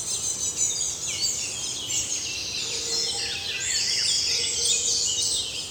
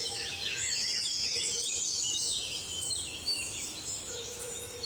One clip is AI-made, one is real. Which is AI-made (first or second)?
second